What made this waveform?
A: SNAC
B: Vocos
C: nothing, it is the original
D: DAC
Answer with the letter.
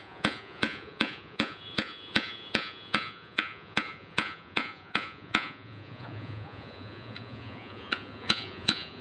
B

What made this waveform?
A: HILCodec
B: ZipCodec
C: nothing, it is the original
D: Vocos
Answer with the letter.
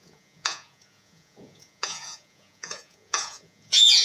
D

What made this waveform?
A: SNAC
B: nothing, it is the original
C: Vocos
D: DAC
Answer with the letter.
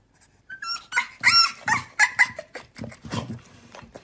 B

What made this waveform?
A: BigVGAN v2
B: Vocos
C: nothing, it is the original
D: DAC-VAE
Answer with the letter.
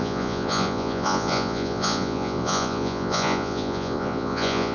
B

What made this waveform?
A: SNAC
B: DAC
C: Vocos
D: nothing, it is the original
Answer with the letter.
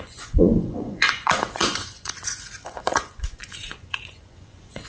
C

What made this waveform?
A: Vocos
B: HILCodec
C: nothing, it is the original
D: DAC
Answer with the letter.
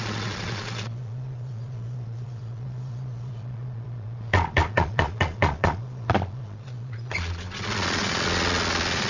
A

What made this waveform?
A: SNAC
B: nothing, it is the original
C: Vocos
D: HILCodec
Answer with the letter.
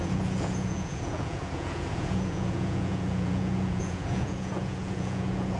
C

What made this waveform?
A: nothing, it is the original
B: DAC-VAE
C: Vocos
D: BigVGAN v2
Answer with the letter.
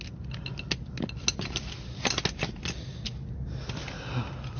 A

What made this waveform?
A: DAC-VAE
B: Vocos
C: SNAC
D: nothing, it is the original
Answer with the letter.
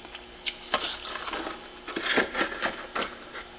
D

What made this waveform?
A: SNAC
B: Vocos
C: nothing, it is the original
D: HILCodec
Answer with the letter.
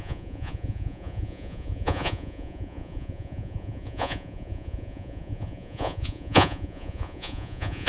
B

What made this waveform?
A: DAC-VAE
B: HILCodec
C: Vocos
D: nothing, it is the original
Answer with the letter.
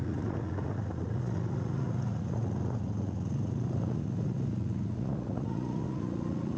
C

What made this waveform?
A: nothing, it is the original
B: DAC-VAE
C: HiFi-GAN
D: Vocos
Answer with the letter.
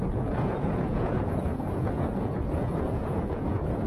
D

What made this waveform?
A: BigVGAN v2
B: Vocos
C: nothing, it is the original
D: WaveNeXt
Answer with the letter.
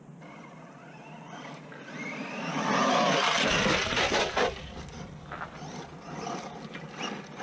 C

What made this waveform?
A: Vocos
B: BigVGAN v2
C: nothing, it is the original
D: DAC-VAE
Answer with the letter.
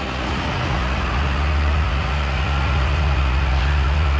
A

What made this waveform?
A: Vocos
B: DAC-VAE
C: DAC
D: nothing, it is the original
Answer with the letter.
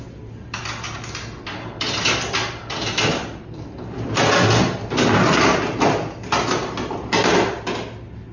D